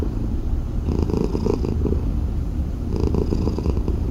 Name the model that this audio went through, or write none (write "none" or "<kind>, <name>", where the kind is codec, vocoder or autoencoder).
none